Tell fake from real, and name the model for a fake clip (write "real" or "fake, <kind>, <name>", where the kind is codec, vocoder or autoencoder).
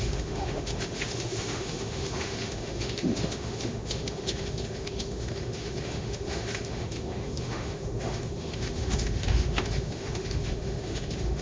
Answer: fake, autoencoder, DAC-VAE